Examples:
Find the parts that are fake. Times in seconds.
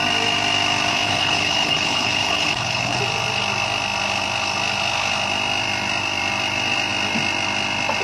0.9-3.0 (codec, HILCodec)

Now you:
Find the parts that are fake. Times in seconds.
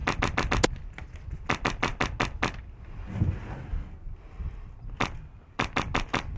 none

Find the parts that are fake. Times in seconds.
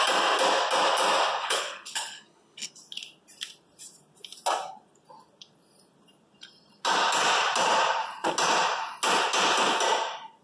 1.4-2.7 (codec, HILCodec)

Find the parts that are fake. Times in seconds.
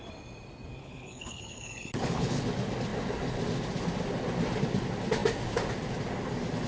0.8-2.4 (codec, HILCodec)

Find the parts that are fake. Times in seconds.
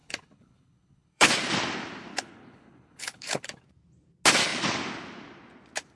0.0-1.3 (codec, HILCodec); 2.1-3.6